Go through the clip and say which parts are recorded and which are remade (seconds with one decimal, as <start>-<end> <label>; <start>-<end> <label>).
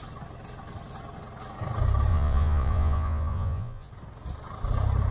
0.0-2.1 recorded; 2.1-3.9 remade; 3.9-5.1 recorded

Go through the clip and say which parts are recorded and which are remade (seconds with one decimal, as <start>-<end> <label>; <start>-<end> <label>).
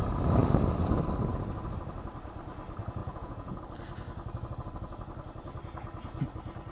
0.0-3.0 recorded; 3.0-3.6 remade; 3.6-6.7 recorded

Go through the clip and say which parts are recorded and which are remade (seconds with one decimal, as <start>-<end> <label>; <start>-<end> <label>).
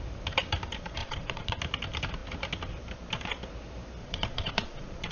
0.0-1.0 recorded; 1.0-1.6 remade; 1.6-4.0 recorded; 4.0-5.1 remade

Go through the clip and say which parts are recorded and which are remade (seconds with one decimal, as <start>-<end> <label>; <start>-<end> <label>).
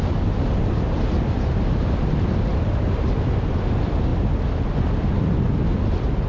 0.0-6.3 recorded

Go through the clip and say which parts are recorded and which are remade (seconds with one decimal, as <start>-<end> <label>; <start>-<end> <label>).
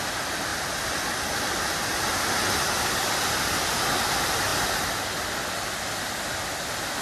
0.0-7.0 recorded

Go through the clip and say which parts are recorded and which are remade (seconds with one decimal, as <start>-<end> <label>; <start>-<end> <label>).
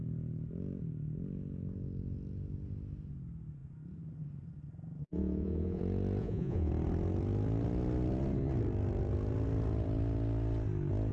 0.0-5.0 recorded; 5.0-5.8 remade; 5.8-6.2 recorded; 6.2-6.7 remade; 6.7-11.1 recorded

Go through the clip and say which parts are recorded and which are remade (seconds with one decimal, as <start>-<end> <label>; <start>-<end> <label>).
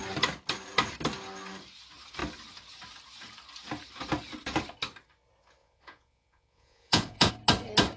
0.0-5.6 recorded; 5.6-7.3 remade; 7.3-8.0 recorded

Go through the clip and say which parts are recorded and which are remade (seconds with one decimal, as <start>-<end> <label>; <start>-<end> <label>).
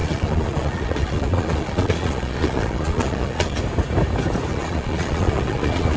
0.0-3.6 remade; 3.6-4.5 recorded; 4.5-6.0 remade